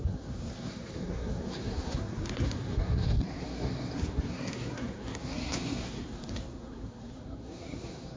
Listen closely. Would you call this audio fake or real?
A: fake